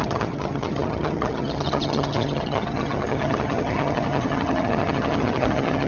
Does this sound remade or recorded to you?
remade